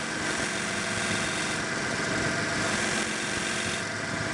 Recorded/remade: recorded